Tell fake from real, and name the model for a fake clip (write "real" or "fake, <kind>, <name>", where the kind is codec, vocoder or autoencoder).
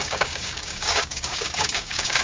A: fake, codec, DAC